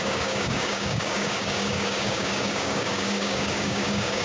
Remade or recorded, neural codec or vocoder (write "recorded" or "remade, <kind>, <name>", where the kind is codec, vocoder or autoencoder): remade, codec, DAC